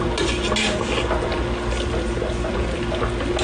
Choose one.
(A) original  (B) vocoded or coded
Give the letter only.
A